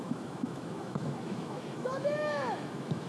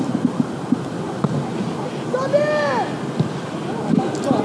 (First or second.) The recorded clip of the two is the second